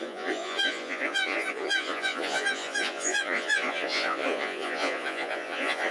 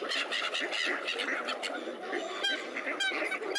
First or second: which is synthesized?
first